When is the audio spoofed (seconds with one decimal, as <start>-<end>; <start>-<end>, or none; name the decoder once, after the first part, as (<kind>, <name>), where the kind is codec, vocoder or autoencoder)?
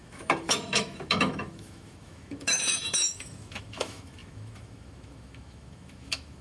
0.0-6.4 (autoencoder, DAC-VAE)